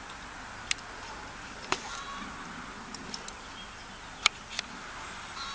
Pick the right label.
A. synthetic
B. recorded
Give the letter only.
B